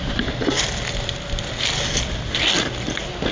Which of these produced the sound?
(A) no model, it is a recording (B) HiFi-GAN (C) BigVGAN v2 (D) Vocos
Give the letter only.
A